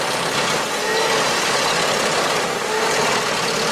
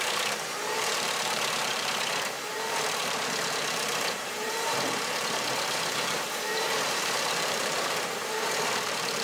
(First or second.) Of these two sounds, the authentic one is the first